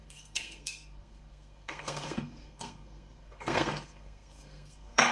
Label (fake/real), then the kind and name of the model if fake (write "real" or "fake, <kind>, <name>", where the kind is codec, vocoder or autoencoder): fake, codec, SNAC